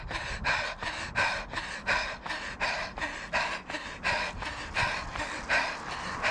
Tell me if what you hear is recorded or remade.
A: recorded